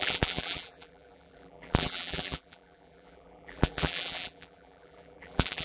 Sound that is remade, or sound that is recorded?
remade